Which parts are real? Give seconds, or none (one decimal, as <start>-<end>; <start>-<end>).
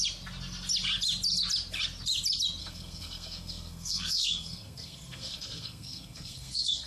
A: 0.0-2.6